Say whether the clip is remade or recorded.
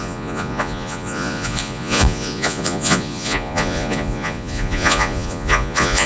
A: remade